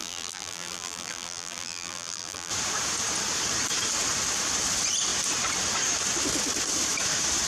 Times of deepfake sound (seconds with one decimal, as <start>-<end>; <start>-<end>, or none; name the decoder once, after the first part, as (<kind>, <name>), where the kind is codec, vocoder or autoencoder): 0.0-2.5 (vocoder, BigVGAN v2)